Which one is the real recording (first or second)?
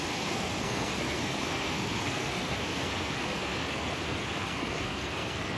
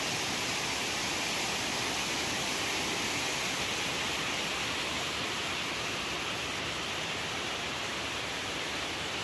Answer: second